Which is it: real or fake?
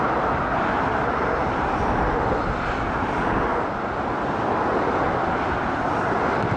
real